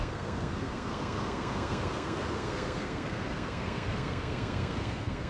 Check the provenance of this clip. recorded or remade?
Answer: remade